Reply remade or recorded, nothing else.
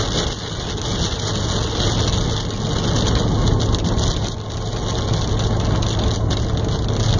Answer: recorded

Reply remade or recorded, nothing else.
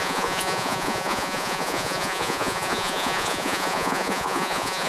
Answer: remade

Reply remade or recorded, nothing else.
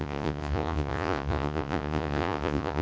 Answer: remade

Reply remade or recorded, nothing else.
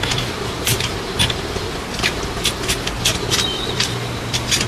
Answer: recorded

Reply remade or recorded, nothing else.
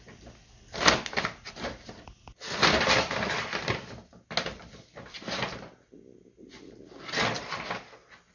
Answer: recorded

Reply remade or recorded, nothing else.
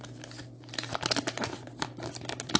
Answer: recorded